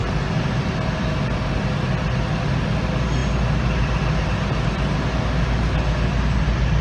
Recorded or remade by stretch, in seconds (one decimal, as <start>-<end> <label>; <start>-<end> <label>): 0.0-6.8 recorded